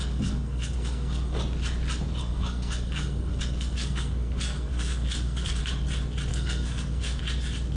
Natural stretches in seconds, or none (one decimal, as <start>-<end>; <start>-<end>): 1.4-2.2; 5.6-6.3; 7.2-7.8